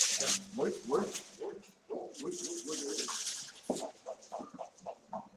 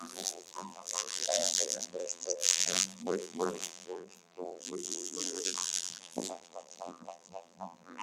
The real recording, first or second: first